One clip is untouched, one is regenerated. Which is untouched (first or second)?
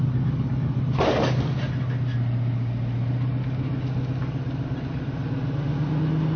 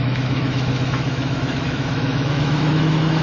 first